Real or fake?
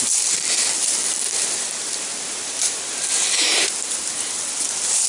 real